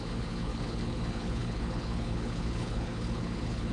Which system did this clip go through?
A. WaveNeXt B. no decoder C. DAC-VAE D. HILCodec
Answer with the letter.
D